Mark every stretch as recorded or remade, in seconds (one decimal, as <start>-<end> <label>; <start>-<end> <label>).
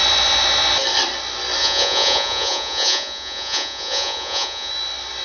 0.0-1.6 recorded; 1.6-4.7 remade; 4.7-5.2 recorded